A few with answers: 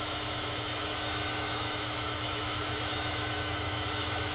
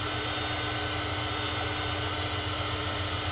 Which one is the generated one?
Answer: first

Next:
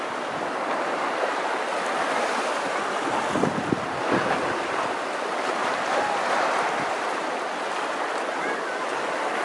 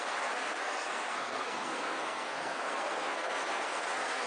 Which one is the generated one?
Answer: second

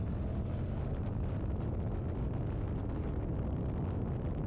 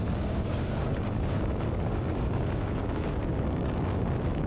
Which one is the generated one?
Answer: second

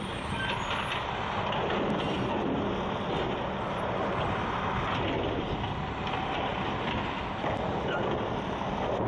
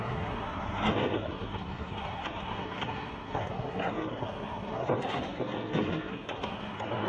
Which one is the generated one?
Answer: second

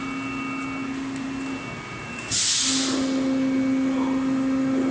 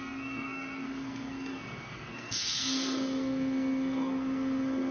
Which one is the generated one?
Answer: second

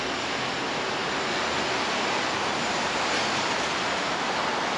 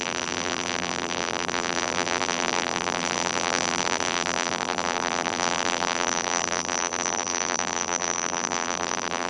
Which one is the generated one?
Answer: second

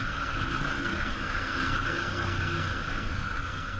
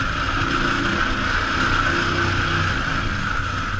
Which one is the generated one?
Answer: first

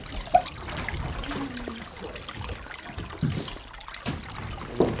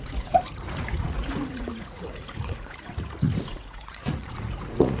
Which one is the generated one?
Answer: second